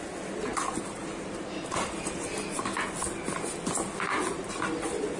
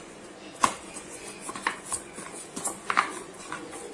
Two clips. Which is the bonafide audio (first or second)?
first